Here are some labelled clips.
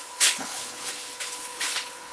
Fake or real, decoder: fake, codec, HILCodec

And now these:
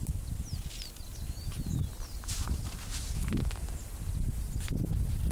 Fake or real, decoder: real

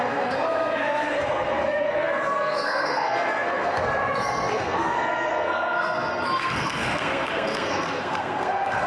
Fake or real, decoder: fake, codec, SNAC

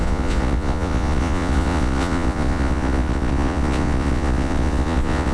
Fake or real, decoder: fake, vocoder, Vocos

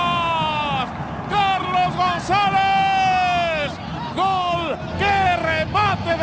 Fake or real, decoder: real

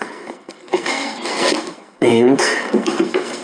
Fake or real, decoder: fake, codec, SNAC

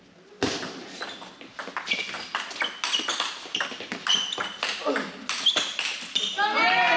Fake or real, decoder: real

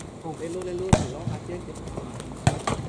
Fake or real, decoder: real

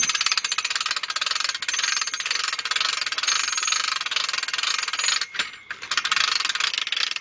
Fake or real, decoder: real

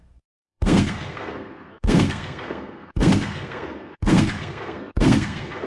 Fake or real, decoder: fake, codec, SNAC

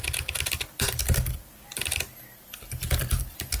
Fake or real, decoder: real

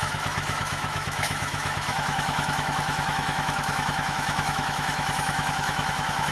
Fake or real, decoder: fake, autoencoder, DAC-VAE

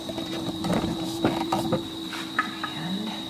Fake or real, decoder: fake, vocoder, BigVGAN v2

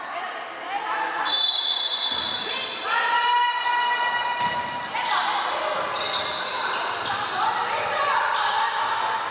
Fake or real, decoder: real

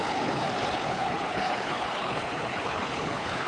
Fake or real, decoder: fake, codec, HILCodec